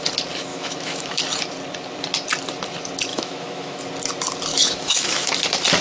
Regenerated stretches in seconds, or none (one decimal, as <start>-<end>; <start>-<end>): 0.5-1.2; 3.1-3.8; 4.5-5.3